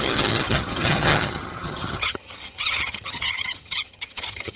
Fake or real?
fake